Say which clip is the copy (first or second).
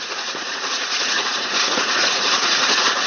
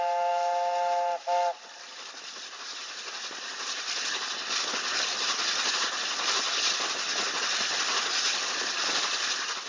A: first